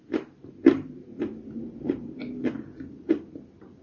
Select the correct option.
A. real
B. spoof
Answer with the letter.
B